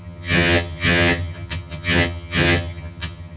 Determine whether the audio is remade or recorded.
remade